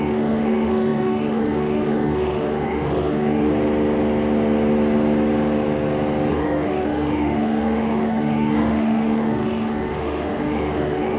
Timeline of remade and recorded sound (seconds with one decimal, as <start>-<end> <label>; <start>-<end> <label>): 0.0-3.5 remade; 3.5-6.3 recorded; 6.3-11.2 remade